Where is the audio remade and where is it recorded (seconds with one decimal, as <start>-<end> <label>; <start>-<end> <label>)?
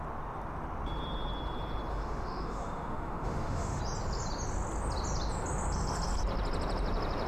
0.0-1.9 recorded; 1.9-3.8 remade; 3.8-7.3 recorded